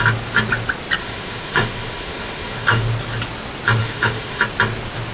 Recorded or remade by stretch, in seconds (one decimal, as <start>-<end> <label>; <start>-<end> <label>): 0.0-1.0 recorded; 1.0-2.8 remade; 2.8-3.8 recorded; 3.8-4.4 remade; 4.4-5.1 recorded